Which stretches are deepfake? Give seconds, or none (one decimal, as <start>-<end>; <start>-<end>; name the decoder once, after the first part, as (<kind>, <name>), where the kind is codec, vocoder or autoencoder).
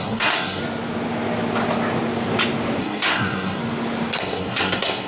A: 0.0-0.6 (codec, SNAC); 2.8-3.6; 4.2-5.1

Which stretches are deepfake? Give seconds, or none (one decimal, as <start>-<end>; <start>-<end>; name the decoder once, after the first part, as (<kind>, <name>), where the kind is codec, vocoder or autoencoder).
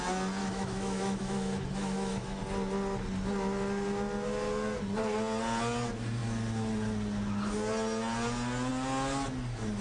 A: 0.4-2.4 (autoencoder, DAC-VAE)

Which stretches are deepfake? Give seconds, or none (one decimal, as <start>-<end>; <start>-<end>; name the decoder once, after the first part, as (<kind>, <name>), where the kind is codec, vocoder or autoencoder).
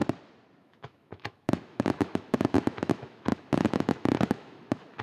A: 0.6-5.0 (autoencoder, DAC-VAE)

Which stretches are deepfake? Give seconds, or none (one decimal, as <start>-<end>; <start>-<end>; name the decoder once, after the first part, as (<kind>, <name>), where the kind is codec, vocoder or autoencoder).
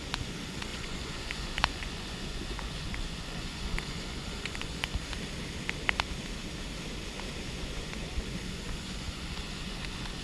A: 0.0-4.9 (vocoder, Vocos); 7.4-10.2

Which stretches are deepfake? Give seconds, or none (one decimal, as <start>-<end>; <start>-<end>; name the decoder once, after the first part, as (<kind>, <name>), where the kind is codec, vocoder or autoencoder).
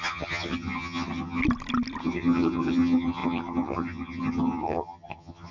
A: 0.0-1.4 (vocoder, HiFi-GAN); 2.0-5.5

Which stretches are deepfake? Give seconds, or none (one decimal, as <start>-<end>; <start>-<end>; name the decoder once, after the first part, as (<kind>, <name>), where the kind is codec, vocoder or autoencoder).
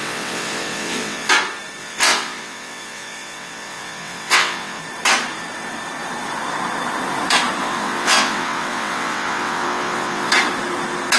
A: 0.0-1.3 (vocoder, WaveNeXt); 1.8-4.8; 7.6-10.3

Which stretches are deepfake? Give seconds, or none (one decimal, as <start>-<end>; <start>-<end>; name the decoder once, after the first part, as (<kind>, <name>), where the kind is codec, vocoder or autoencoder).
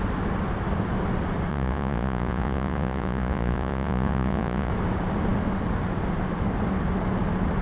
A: 1.5-4.7 (vocoder, Vocos)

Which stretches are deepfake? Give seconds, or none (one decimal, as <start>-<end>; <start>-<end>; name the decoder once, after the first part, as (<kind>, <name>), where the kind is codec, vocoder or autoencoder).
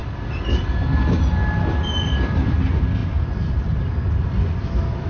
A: none